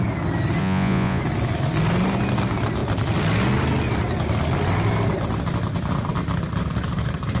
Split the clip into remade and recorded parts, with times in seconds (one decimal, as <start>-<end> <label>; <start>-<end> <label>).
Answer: 0.0-0.6 recorded; 0.6-1.2 remade; 1.2-7.4 recorded